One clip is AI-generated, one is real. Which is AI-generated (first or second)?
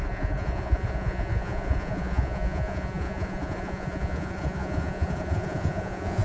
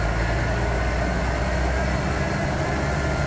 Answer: first